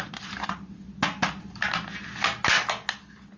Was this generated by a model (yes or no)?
no